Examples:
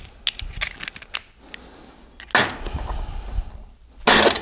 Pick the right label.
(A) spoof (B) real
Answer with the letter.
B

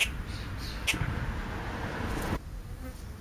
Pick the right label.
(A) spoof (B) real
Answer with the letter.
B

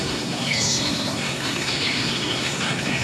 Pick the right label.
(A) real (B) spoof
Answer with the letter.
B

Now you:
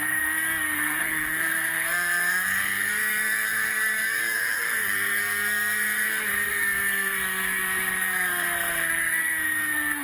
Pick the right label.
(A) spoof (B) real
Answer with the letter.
A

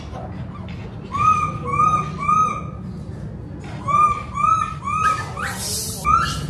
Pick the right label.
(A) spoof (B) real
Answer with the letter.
B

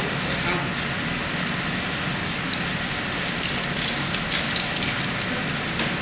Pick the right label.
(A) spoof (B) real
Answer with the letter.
B